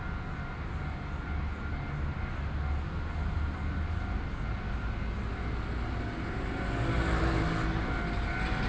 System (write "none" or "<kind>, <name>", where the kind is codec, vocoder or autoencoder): none